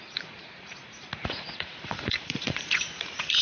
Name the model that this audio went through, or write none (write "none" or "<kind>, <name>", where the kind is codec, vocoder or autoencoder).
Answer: vocoder, Vocos